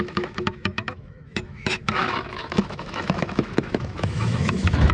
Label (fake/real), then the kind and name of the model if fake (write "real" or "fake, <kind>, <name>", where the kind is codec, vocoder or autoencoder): fake, autoencoder, DAC-VAE